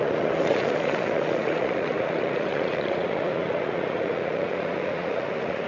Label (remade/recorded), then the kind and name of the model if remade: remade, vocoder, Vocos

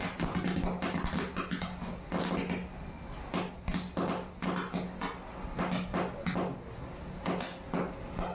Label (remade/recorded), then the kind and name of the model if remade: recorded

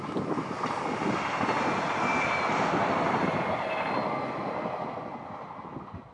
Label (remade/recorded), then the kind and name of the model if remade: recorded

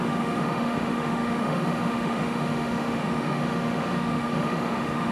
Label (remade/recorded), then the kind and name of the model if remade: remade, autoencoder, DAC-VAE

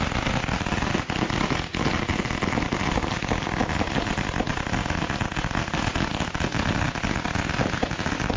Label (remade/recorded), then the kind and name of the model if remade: recorded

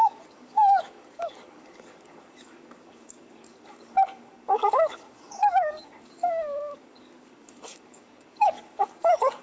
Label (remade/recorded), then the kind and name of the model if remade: remade, codec, DAC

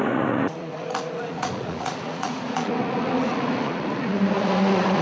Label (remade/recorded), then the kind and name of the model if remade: remade, vocoder, Vocos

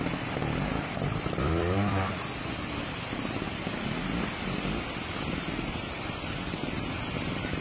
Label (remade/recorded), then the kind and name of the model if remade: remade, vocoder, BigVGAN v2